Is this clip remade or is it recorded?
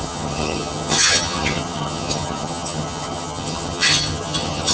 remade